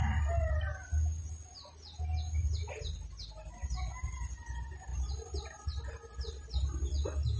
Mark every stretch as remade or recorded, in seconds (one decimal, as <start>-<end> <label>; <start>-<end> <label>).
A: 0.0-7.4 recorded